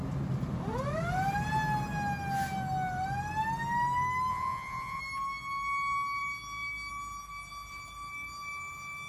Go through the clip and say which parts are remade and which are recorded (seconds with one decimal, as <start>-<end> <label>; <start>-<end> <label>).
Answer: 0.0-4.3 recorded; 4.3-5.0 remade; 5.0-9.1 recorded

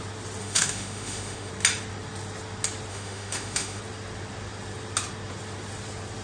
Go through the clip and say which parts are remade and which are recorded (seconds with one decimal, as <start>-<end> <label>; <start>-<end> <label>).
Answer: 0.0-0.4 recorded; 0.4-1.5 remade; 1.5-2.9 recorded; 2.9-3.8 remade; 3.8-6.2 recorded

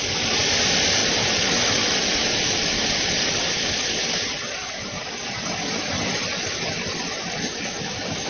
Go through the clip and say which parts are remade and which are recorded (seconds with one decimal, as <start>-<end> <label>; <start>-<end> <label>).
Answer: 0.0-8.3 recorded

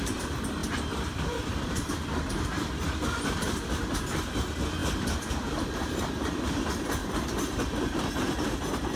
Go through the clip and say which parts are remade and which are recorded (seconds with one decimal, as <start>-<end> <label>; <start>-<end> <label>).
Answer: 0.0-7.0 remade; 7.0-9.0 recorded

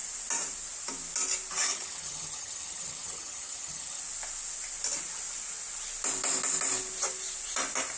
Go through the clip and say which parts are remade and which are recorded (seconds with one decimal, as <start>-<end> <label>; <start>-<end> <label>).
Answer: 0.0-1.7 recorded; 1.7-4.0 remade; 4.0-8.0 recorded